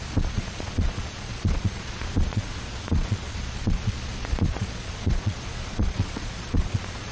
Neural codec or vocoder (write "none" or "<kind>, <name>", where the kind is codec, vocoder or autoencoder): vocoder, Vocos